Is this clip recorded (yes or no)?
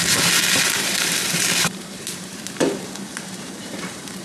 no